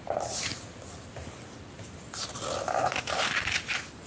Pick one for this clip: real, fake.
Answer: fake